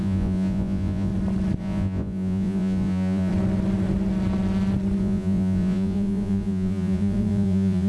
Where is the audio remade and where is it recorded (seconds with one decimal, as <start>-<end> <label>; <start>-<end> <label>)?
0.0-1.1 remade; 1.1-1.6 recorded; 1.6-3.3 remade; 3.3-5.0 recorded; 5.0-7.9 remade

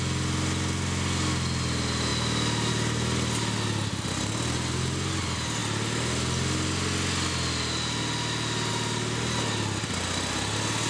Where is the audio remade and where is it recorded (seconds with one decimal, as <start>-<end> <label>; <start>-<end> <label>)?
0.0-10.9 recorded

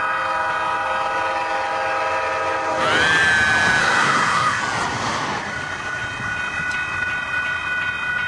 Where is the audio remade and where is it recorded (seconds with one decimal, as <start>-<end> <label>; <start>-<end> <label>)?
0.0-3.8 recorded; 3.8-4.6 remade; 4.6-8.3 recorded

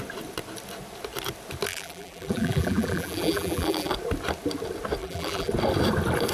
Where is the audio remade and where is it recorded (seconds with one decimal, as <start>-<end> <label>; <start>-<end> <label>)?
0.0-1.7 recorded; 1.7-3.9 remade; 3.9-5.0 recorded; 5.0-5.5 remade; 5.5-6.3 recorded

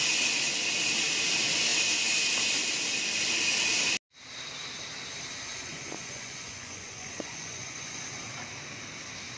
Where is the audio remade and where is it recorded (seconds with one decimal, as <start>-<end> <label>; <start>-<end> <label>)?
0.0-5.5 recorded; 5.5-8.0 remade; 8.0-9.4 recorded